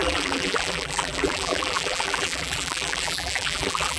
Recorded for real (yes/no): no